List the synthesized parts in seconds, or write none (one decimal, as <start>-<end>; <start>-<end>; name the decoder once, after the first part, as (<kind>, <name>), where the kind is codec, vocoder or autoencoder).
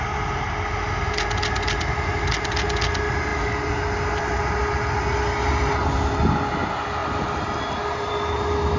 none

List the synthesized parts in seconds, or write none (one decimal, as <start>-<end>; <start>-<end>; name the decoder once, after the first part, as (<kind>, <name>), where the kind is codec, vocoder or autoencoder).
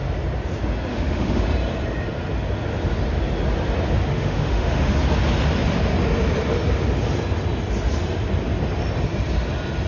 0.9-1.4 (autoencoder, DAC-VAE); 4.1-4.9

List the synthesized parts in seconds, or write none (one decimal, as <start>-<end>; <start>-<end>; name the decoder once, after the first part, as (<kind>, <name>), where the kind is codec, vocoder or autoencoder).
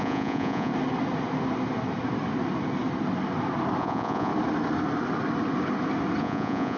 0.0-0.7 (vocoder, Vocos); 3.8-4.3; 6.2-6.8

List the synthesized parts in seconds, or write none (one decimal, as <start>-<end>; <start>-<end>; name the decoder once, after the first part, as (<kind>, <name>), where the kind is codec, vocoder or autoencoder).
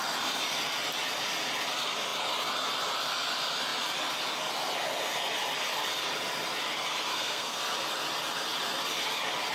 7.1-7.6 (codec, SNAC)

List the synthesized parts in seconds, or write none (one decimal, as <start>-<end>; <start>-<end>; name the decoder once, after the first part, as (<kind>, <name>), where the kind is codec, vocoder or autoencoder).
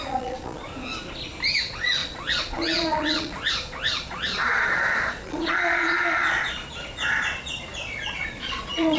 0.0-0.7 (vocoder, Vocos); 1.6-9.0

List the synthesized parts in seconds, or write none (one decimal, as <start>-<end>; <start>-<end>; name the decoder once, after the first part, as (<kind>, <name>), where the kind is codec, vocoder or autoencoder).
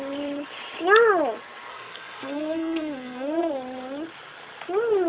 1.7-3.5 (codec, SNAC)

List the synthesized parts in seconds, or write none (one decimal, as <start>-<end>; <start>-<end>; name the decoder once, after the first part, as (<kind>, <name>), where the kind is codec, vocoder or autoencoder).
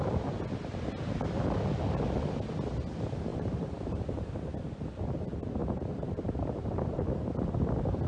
3.3-4.0 (vocoder, BigVGAN v2); 5.6-7.0